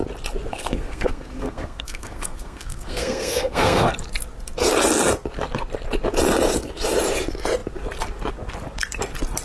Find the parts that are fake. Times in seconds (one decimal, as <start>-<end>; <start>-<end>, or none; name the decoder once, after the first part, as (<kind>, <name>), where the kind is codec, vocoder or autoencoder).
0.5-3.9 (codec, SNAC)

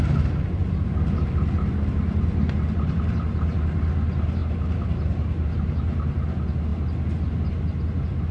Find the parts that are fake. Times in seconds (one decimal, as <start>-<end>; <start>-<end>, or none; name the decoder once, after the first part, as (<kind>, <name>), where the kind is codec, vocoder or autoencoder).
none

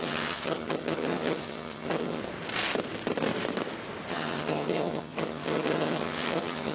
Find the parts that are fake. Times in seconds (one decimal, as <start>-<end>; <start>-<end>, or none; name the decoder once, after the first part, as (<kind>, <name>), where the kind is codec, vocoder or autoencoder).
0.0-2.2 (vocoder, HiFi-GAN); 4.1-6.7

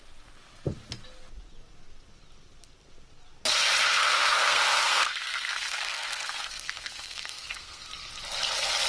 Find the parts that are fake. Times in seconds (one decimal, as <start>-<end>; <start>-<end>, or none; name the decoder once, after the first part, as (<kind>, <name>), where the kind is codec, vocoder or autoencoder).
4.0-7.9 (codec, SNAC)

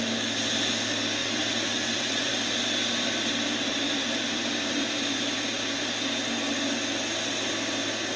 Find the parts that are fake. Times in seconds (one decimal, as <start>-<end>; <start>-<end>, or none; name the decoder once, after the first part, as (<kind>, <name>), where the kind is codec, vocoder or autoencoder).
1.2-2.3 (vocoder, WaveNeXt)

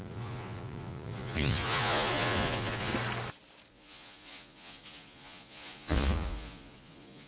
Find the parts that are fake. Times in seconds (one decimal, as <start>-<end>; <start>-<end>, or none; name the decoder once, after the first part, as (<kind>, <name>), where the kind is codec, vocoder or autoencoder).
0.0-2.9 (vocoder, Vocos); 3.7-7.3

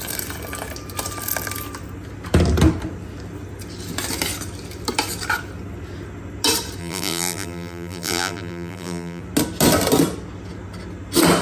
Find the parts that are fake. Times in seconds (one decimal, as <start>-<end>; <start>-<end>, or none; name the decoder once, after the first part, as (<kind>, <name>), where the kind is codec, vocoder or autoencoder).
6.8-9.2 (vocoder, BigVGAN v2)

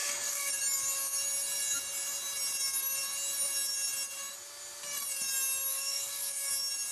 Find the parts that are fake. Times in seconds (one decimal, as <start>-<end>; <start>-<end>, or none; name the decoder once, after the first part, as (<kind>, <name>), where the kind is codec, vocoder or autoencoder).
0.0-0.5 (codec, DAC); 5.7-6.5